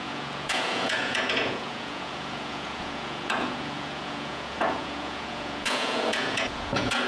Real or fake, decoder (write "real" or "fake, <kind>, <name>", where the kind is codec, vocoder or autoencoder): fake, vocoder, Vocos